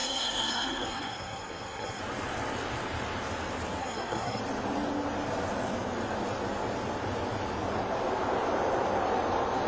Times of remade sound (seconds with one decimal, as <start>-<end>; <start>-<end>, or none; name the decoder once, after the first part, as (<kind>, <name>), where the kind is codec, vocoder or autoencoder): 0.0-2.0 (codec, SNAC); 3.8-4.4